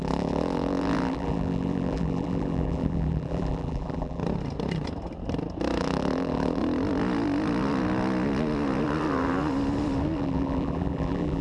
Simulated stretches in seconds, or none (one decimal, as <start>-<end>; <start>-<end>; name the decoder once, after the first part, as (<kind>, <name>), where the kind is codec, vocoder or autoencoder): 0.0-4.2 (vocoder, BigVGAN v2); 5.8-6.6; 10.2-11.4